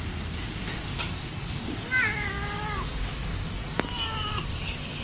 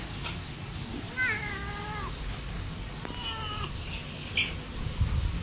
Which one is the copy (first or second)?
first